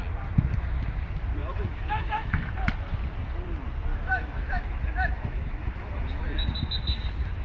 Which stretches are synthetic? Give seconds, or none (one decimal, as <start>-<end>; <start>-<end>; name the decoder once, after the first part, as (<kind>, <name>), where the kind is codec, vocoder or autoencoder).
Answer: 1.4-2.5 (autoencoder, DAC-VAE); 3.9-6.2